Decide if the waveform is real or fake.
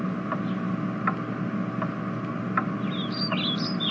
real